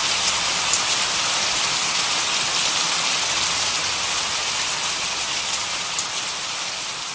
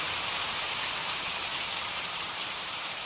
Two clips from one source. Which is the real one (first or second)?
first